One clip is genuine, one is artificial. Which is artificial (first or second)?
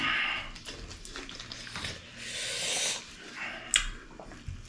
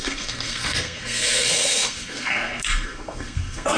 second